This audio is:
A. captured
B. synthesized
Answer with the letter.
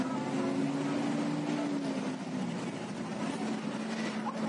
A